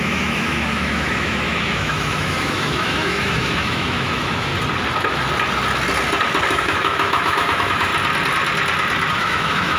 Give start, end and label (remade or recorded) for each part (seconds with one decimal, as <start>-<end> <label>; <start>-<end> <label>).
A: 0.0-4.5 remade; 4.5-6.5 recorded; 6.5-7.9 remade; 7.9-9.1 recorded; 9.1-9.8 remade